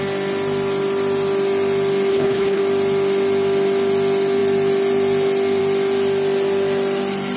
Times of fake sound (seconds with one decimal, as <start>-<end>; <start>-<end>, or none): 2.1-2.6